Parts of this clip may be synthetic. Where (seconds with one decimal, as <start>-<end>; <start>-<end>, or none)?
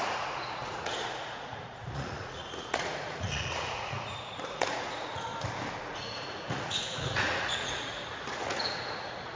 0.0-5.3; 5.8-9.4